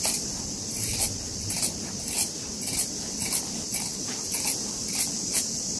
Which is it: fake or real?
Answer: fake